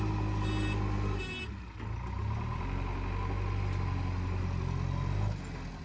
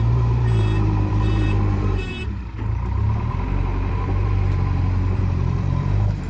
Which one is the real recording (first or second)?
first